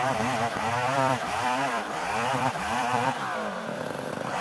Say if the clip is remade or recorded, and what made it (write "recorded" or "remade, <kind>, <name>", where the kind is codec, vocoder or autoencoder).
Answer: remade, vocoder, BigVGAN v2